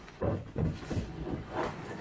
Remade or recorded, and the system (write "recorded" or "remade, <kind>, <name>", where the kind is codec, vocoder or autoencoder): remade, vocoder, Vocos